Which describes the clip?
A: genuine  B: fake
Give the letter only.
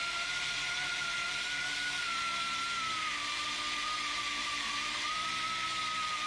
A